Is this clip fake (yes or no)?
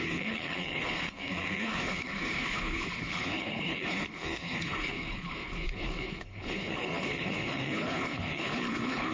yes